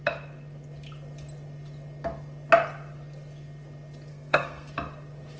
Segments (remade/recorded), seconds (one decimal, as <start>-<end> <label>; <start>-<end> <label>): 0.0-4.1 recorded; 4.1-4.7 remade; 4.7-5.4 recorded